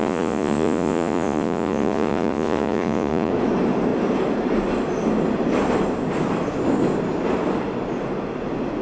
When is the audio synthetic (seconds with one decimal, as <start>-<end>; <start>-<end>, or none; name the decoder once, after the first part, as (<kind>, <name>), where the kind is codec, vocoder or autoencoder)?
0.0-3.3 (vocoder, Vocos)

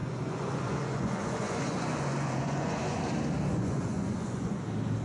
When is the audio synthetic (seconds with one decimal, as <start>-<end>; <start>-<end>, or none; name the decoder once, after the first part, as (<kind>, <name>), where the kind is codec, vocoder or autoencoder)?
0.0-3.0 (vocoder, Vocos); 3.5-4.6

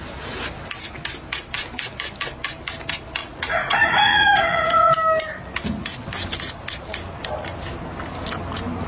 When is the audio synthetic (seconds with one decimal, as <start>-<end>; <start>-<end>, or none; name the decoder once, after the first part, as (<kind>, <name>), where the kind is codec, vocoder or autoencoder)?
3.2-4.9 (vocoder, Vocos)

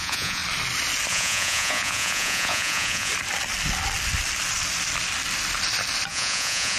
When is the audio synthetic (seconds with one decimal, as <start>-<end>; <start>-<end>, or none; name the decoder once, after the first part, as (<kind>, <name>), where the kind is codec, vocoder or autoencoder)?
0.0-0.4 (vocoder, Vocos); 1.1-3.1; 6.1-6.8

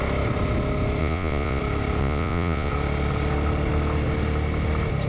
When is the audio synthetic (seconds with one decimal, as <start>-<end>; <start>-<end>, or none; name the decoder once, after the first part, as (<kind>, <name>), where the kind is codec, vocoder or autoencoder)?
1.0-1.6 (vocoder, Vocos); 2.0-2.7